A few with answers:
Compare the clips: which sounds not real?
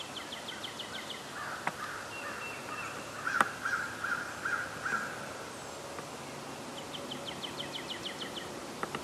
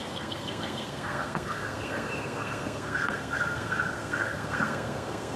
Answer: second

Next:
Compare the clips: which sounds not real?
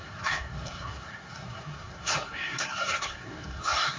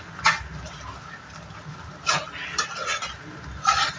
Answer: first